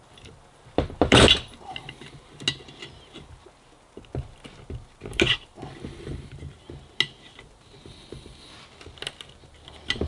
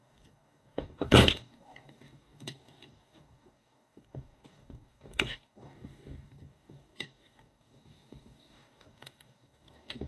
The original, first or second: first